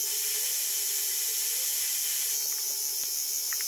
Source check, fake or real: real